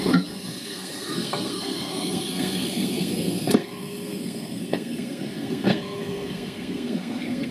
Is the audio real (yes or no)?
no